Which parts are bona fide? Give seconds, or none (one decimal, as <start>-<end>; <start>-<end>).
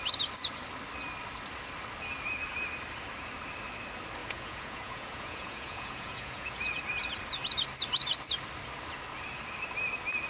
0.0-4.2; 6.8-10.3